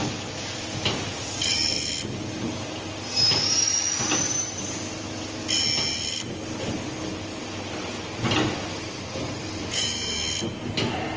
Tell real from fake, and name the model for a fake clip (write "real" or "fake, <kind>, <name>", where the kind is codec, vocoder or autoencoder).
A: real